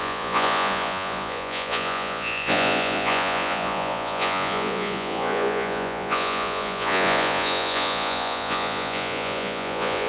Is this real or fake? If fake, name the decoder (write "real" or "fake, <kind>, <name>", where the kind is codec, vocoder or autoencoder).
fake, vocoder, Vocos